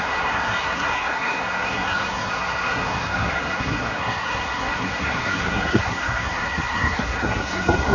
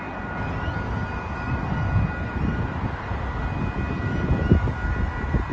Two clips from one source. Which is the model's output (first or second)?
first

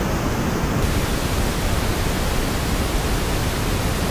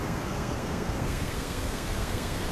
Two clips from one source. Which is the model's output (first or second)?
second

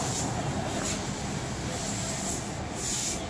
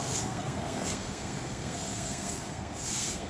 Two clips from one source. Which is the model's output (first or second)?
second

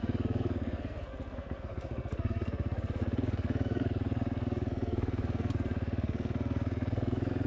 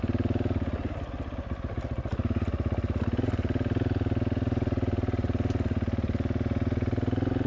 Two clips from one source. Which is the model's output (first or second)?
first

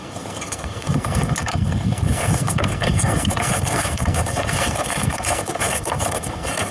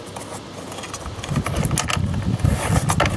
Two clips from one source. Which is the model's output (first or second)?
first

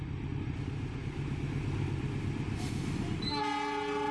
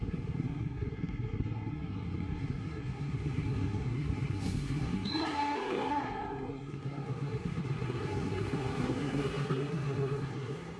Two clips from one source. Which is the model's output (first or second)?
second